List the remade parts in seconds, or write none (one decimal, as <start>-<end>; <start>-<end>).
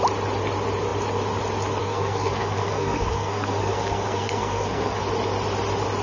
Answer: 1.8-5.0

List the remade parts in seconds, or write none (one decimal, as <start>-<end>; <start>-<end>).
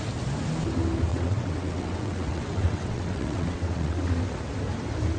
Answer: 1.1-4.2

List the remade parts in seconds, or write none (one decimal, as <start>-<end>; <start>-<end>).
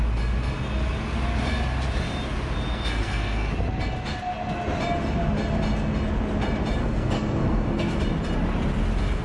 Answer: 2.7-3.5; 6.8-8.0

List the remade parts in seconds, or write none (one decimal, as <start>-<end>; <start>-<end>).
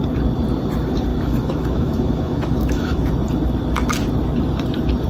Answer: 1.1-3.1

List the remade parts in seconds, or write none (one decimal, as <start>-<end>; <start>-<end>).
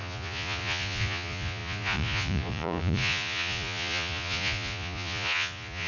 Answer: 0.0-5.9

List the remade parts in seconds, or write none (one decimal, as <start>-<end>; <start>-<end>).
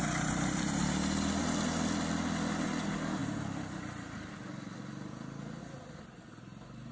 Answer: none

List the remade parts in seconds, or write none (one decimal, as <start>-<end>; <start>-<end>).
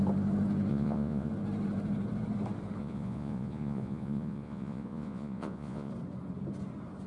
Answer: 0.7-1.3; 2.8-5.9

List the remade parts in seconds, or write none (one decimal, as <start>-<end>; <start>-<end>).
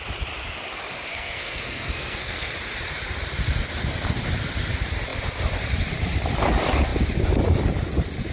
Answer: 1.1-2.5